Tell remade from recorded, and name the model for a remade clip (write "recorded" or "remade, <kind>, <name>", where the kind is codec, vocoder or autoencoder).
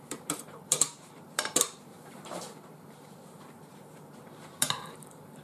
remade, vocoder, BigVGAN v2